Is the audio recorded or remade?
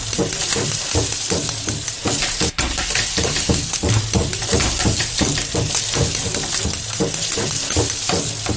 recorded